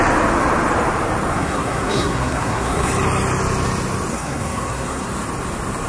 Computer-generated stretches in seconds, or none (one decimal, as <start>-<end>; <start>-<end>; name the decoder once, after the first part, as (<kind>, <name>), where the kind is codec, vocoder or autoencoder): 1.3-2.9 (codec, SNAC); 4.1-5.1